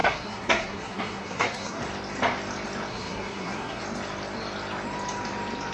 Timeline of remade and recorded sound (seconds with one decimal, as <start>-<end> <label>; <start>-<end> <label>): 0.0-1.8 remade; 1.8-2.9 recorded; 2.9-3.8 remade; 3.8-5.7 recorded